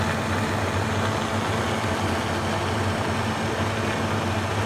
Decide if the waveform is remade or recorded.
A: recorded